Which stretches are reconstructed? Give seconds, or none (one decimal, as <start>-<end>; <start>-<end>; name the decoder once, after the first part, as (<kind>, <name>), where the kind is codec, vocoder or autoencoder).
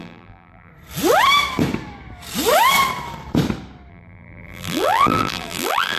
0.0-0.7 (vocoder, BigVGAN v2); 3.9-6.0